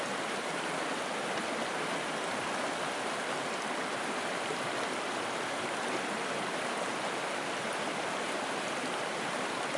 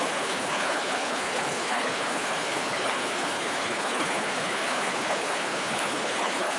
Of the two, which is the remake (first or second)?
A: second